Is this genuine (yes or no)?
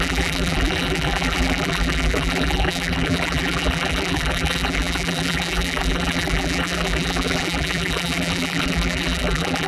no